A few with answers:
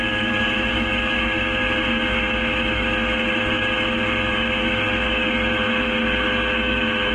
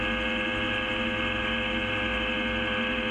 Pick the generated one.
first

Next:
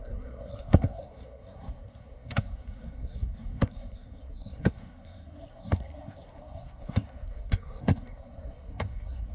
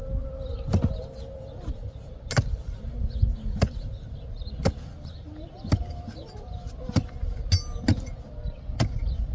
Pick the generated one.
first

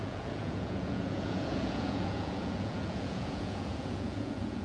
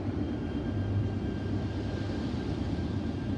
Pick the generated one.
first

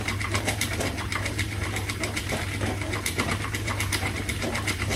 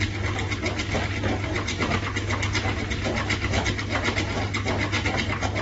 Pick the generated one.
first